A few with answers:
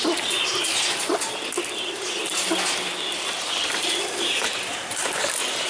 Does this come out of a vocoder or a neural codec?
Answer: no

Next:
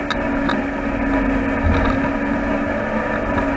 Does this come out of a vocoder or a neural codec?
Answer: no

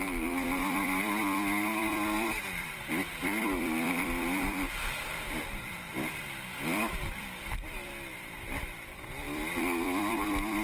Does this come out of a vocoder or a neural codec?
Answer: yes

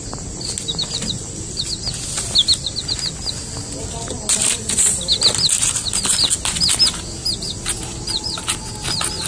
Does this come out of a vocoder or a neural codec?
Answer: no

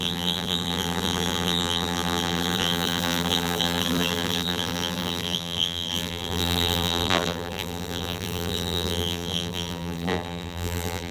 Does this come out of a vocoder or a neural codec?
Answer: yes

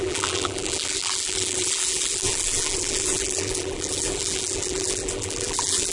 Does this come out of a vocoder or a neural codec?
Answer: yes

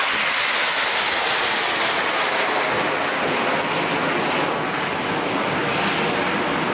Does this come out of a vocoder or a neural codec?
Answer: no